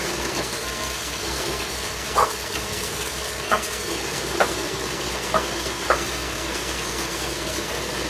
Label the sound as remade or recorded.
remade